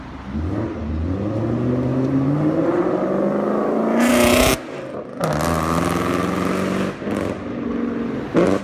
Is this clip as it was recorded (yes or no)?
yes